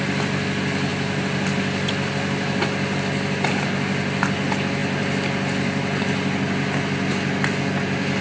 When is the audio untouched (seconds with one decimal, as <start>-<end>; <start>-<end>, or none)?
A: 0.0-8.2